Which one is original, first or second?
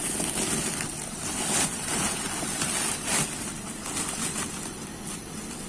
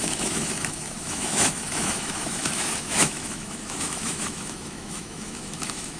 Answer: first